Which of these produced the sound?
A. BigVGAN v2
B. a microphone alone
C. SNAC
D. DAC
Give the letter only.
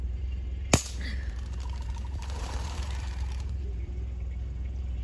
A